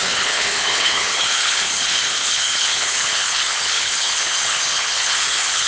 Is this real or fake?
fake